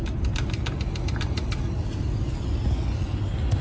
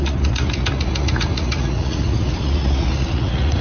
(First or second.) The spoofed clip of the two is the second